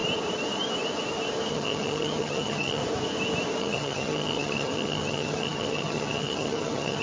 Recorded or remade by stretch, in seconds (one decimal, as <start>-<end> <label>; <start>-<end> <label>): 0.0-1.5 recorded; 1.5-2.8 remade; 2.8-3.6 recorded; 3.6-7.0 remade

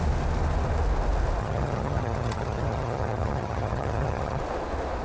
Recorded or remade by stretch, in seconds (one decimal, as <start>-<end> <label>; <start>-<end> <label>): 0.0-1.4 recorded; 1.4-4.4 remade; 4.4-5.0 recorded